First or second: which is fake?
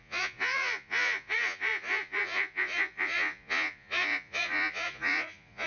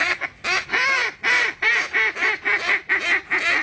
first